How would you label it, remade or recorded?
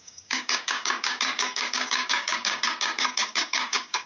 remade